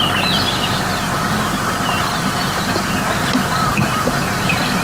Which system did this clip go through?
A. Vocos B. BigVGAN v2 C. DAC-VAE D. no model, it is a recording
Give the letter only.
D